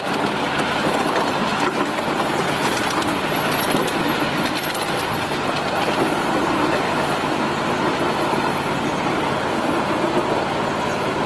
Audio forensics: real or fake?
real